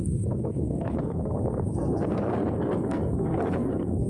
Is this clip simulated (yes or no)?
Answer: yes